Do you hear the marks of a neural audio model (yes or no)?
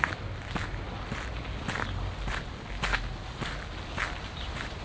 no